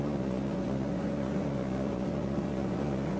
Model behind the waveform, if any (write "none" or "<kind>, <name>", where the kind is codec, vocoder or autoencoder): vocoder, Vocos